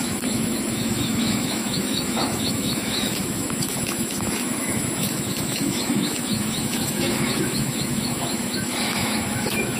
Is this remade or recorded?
remade